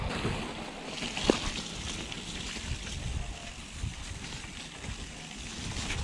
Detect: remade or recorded recorded